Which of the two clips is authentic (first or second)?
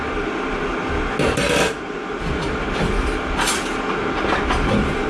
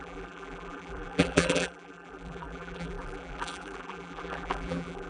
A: first